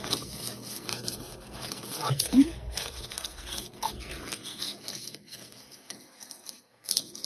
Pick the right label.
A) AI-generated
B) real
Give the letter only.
A